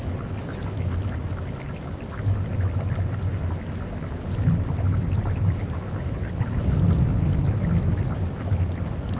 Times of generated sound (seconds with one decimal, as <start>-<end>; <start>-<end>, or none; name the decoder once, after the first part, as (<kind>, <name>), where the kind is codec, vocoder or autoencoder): none